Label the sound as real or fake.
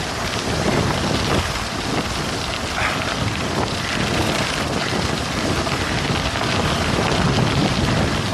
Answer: real